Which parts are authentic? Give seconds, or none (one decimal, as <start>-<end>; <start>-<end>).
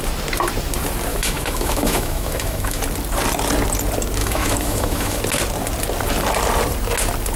0.0-1.1; 2.8-4.2; 5.2-7.4